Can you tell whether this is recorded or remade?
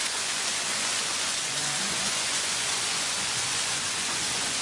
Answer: remade